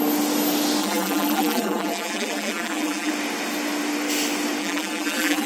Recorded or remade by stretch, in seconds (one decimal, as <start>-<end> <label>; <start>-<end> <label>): 0.0-0.8 recorded; 0.8-3.1 remade; 3.1-4.6 recorded; 4.6-5.5 remade